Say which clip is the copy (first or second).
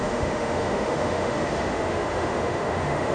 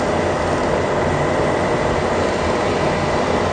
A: first